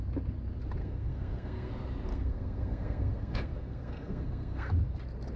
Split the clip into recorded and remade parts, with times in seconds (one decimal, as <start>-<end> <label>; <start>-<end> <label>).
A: 0.0-0.8 recorded; 0.8-1.7 remade; 1.7-2.1 recorded; 2.1-4.7 remade; 4.7-5.4 recorded